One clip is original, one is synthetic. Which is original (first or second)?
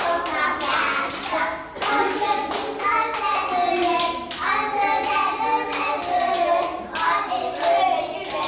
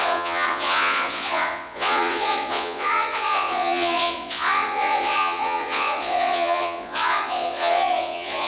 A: first